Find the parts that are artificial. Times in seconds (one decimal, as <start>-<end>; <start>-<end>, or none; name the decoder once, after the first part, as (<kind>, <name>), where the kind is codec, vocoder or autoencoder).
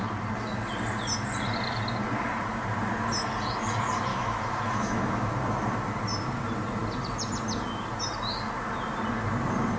4.1-5.3 (autoencoder, DAC-VAE)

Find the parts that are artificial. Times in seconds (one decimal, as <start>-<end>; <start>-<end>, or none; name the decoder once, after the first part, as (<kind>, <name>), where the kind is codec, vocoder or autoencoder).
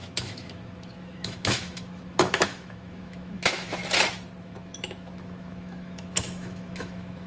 0.0-3.8 (autoencoder, DAC-VAE); 4.4-7.3